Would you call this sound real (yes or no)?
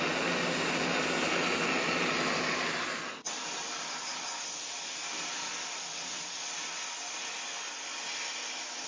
yes